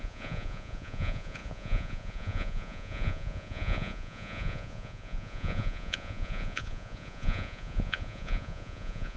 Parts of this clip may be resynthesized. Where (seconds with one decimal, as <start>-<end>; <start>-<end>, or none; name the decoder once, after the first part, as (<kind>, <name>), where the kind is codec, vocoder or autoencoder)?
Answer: 0.0-9.2 (vocoder, Vocos)